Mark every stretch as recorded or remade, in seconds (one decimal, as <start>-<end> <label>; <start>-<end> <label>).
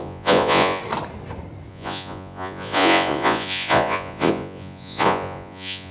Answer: 0.0-0.8 remade; 0.8-1.7 recorded; 1.7-5.9 remade